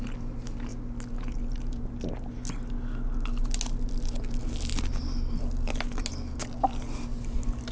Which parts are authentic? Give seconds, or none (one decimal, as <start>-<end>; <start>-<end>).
0.0-7.7